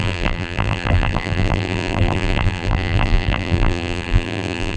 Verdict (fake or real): fake